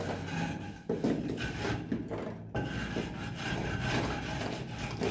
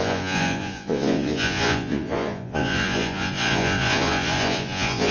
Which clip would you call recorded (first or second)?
first